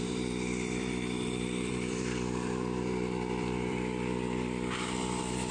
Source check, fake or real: fake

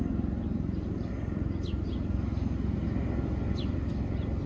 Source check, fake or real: real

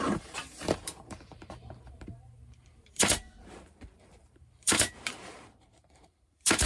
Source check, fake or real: fake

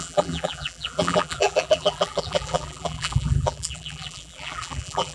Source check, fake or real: fake